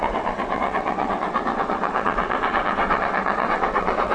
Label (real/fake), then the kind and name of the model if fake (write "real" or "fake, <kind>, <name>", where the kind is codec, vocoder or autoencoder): fake, vocoder, WaveNeXt